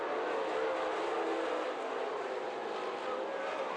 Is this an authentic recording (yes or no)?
yes